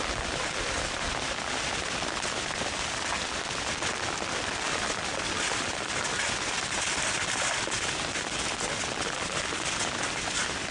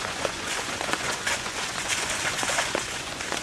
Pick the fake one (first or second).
second